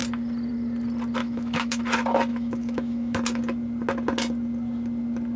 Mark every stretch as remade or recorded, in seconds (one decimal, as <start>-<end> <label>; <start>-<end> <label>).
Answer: 0.0-1.2 recorded; 1.2-1.8 remade; 1.8-2.3 recorded; 2.3-3.4 remade; 3.4-5.4 recorded